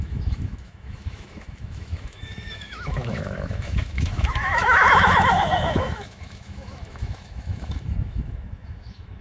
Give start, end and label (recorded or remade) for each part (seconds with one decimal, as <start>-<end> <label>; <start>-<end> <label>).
0.0-9.2 remade